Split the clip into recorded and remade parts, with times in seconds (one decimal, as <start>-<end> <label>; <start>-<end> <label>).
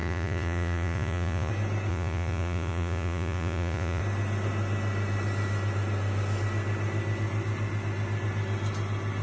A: 0.0-1.5 remade; 1.5-1.9 recorded; 1.9-4.0 remade; 4.0-9.2 recorded